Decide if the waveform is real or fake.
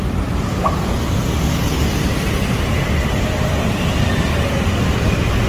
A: real